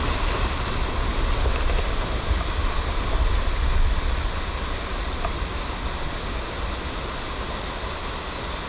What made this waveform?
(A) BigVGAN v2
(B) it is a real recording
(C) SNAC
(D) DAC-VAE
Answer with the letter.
B